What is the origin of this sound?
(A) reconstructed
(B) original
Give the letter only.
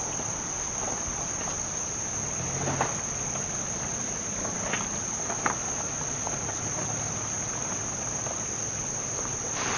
B